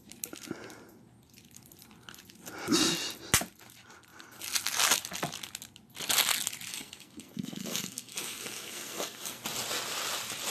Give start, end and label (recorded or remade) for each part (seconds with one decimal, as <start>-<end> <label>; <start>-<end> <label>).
0.0-6.7 recorded; 6.7-9.4 remade; 9.4-10.5 recorded